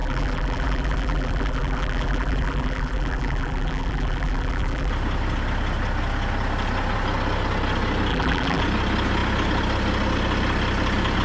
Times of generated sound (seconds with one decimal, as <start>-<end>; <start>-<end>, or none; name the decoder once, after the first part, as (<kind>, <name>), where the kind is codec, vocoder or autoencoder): 0.0-4.9 (vocoder, BigVGAN v2); 8.1-8.6

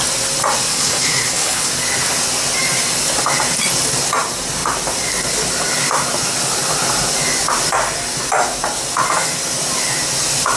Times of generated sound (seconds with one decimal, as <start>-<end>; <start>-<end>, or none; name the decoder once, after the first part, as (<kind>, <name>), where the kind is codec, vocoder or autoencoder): 0.7-1.7 (codec, HILCodec)